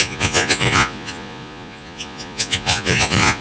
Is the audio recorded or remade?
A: remade